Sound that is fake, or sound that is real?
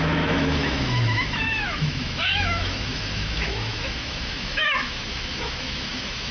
fake